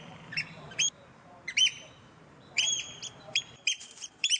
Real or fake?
fake